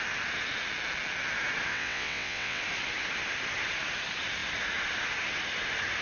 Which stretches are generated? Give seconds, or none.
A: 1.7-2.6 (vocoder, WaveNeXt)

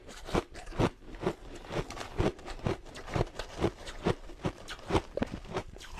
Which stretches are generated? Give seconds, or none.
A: 0.0-0.8 (vocoder, BigVGAN v2); 2.3-6.0

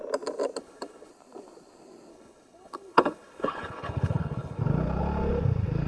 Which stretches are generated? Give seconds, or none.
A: 0.6-1.1 (codec, HILCodec); 2.1-4.6

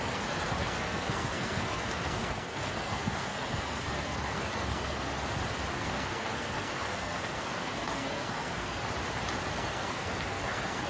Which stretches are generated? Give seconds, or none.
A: 0.0-5.1 (codec, SNAC); 5.7-8.8; 9.5-10.9

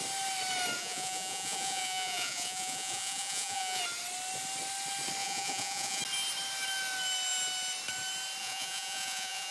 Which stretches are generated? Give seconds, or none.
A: 0.8-3.8 (vocoder, Vocos); 5.2-6.0; 8.4-9.5

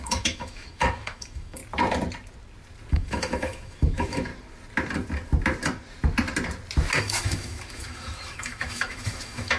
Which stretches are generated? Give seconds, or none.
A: 0.0-1.6 (autoencoder, DAC-VAE); 2.9-4.3; 7.0-9.6

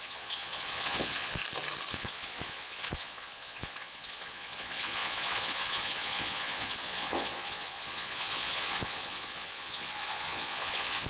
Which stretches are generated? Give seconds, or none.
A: 0.0-1.4 (vocoder, Vocos); 1.9-11.1

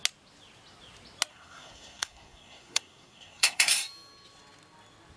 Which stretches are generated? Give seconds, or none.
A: 1.3-3.8 (codec, SNAC)